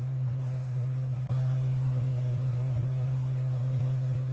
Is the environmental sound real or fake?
fake